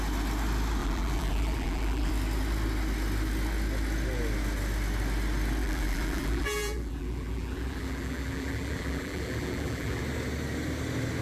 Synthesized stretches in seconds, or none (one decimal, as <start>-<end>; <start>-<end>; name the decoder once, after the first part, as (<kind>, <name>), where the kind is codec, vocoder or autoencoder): 0.8-2.1 (vocoder, BigVGAN v2); 5.6-10.0